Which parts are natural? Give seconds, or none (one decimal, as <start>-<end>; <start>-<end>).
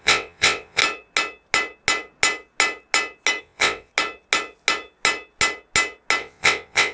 0.8-3.4; 3.9-6.2